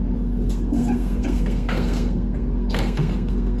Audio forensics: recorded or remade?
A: remade